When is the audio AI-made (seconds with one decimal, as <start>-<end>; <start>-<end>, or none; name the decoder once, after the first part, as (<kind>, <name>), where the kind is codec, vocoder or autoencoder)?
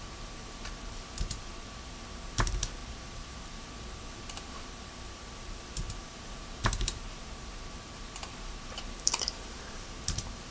0.0-10.5 (vocoder, BigVGAN v2)